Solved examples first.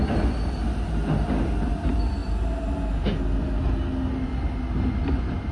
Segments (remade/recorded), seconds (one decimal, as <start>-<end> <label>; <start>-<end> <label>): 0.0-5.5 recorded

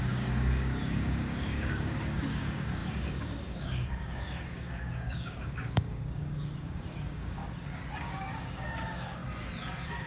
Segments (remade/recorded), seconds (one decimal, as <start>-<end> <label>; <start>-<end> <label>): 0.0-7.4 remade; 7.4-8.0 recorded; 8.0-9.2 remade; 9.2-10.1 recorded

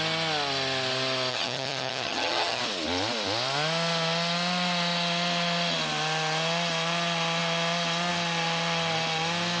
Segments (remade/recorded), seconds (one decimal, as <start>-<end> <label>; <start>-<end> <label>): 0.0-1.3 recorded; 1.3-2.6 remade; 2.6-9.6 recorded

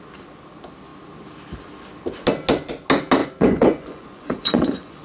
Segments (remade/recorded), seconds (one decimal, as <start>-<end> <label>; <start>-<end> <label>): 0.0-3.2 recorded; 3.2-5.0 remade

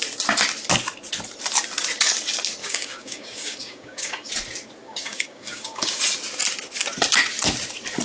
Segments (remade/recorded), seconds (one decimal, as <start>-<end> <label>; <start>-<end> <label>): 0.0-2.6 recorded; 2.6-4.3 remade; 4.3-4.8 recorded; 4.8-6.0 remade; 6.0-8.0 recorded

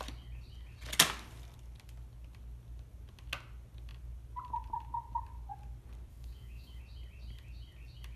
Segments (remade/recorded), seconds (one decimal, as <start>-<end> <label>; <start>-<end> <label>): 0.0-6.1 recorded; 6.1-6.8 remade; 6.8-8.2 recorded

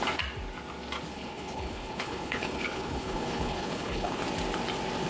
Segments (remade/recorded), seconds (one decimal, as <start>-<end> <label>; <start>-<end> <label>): 0.0-1.1 recorded; 1.1-4.2 remade; 4.2-5.1 recorded